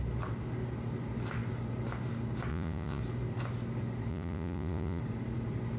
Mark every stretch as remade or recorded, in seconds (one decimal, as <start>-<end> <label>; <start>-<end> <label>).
0.0-2.5 recorded; 2.5-3.0 remade; 3.0-4.1 recorded; 4.1-5.0 remade; 5.0-5.8 recorded